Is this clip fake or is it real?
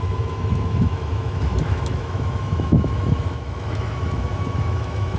fake